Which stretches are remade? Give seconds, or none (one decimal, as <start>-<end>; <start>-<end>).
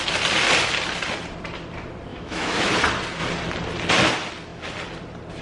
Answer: 2.1-2.7